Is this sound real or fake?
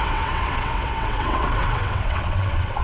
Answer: fake